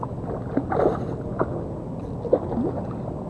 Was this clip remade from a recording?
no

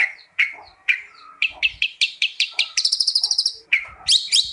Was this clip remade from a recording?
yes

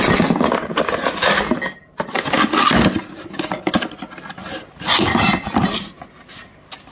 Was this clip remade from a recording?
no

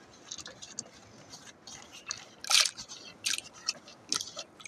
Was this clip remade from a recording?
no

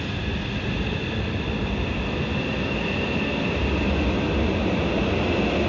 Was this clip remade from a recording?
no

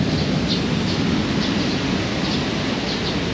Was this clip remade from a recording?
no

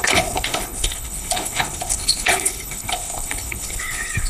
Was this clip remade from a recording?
yes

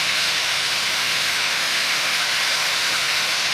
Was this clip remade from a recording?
yes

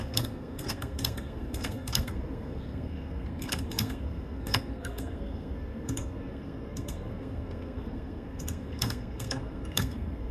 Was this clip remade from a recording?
yes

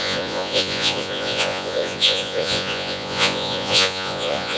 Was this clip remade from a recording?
yes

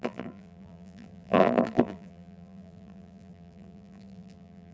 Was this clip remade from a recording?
yes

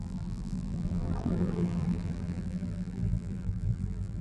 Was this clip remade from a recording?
yes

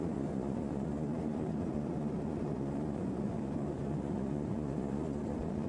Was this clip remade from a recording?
yes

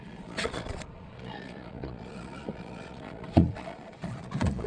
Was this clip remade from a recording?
yes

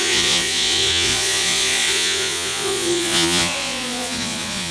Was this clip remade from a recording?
yes